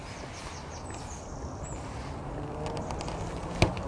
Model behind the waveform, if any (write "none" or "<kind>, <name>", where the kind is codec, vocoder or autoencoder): none